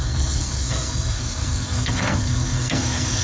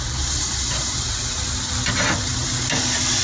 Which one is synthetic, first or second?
first